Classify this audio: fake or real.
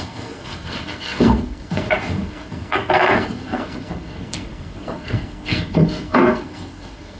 fake